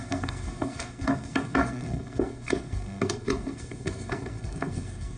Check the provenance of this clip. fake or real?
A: fake